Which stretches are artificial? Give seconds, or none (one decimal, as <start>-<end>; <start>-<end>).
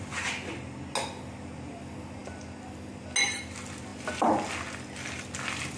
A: none